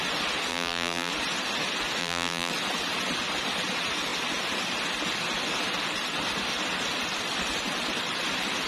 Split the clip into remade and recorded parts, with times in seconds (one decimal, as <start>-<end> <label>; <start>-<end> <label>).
0.0-0.5 recorded; 0.5-1.1 remade; 1.1-2.0 recorded; 2.0-2.5 remade; 2.5-8.7 recorded